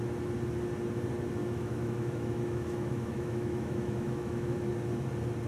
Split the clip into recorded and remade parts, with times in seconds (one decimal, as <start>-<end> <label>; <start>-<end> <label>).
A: 0.0-1.4 recorded; 1.4-4.7 remade; 4.7-5.5 recorded